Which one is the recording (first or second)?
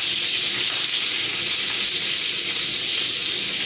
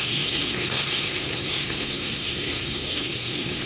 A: first